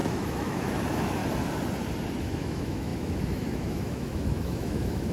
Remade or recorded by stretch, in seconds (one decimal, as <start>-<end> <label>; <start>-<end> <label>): 0.0-1.2 remade; 1.2-2.1 recorded; 2.1-5.1 remade

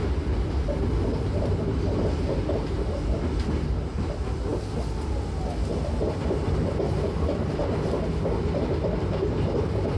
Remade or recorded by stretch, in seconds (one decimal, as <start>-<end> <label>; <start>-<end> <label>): 0.0-10.0 recorded

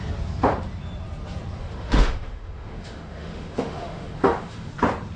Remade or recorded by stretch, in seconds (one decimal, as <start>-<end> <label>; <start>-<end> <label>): 0.0-1.6 recorded; 1.6-4.7 remade; 4.7-5.2 recorded

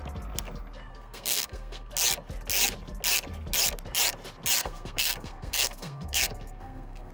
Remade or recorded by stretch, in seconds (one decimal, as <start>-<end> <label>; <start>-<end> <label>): 0.0-0.9 recorded; 0.9-1.9 remade; 1.9-4.6 recorded; 4.6-7.1 remade